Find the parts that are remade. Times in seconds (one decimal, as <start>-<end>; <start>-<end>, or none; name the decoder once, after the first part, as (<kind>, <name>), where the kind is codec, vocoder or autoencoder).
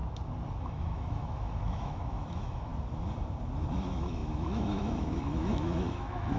0.6-2.7 (autoencoder, DAC-VAE); 3.7-6.4